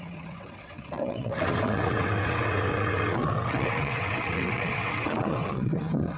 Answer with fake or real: fake